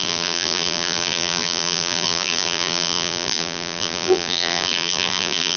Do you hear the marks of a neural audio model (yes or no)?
yes